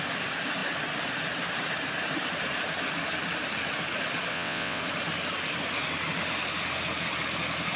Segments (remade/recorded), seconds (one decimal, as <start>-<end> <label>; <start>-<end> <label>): 0.0-4.3 recorded; 4.3-4.8 remade; 4.8-7.8 recorded